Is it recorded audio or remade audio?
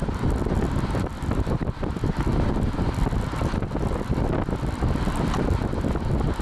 recorded